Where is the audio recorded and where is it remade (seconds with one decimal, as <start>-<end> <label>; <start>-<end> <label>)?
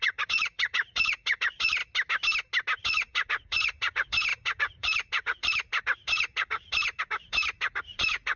0.0-1.8 remade; 1.8-2.8 recorded; 2.8-8.4 remade